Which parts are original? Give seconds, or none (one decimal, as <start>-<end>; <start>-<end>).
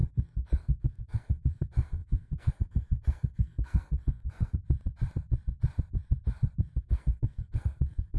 4.6-6.8